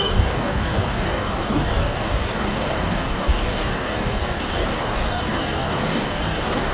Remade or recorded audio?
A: remade